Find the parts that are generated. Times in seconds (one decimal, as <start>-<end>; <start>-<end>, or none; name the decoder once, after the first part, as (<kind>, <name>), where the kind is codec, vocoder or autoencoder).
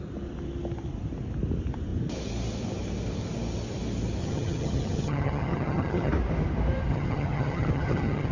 4.2-6.1 (vocoder, HiFi-GAN); 6.9-8.3